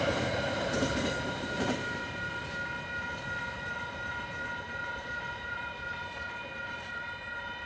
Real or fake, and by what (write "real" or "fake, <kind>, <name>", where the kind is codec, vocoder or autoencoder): fake, vocoder, BigVGAN v2